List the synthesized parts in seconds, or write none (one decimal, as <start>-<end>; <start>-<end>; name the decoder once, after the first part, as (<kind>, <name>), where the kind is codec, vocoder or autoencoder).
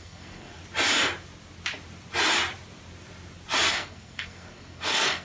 0.0-0.6 (codec, SNAC); 3.7-5.2